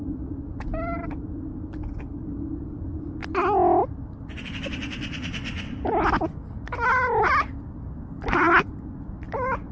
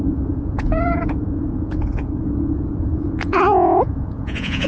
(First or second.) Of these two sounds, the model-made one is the second